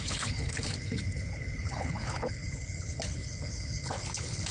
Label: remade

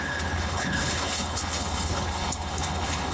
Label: remade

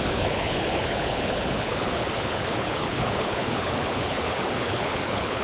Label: remade